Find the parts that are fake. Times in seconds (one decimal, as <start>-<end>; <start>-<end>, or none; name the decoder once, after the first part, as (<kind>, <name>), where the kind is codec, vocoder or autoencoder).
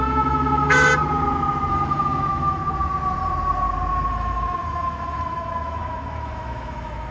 0.0-0.9 (autoencoder, DAC-VAE); 1.7-2.6; 4.1-7.1